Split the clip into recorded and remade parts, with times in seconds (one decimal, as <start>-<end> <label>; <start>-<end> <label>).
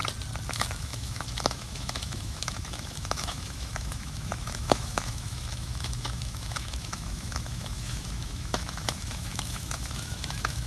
0.0-0.5 recorded; 0.5-10.7 remade